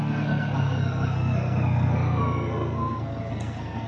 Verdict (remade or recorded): remade